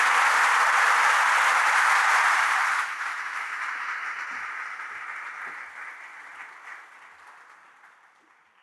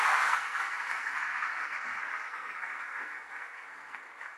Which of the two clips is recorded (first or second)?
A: first